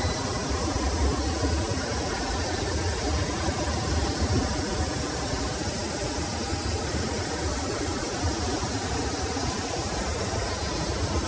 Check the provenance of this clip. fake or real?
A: real